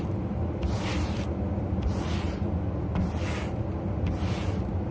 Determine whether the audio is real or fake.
real